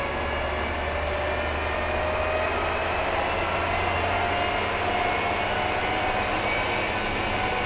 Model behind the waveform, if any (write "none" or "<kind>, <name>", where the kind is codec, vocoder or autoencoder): none